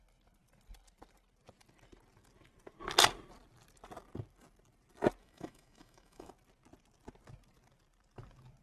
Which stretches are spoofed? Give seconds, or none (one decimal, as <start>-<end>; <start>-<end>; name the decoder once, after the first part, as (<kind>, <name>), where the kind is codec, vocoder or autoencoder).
5.2-6.3 (autoencoder, DAC-VAE)